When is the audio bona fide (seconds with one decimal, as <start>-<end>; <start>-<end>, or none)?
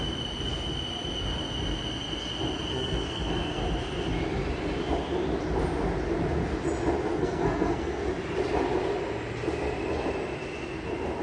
0.0-2.7; 3.6-7.1; 8.0-11.2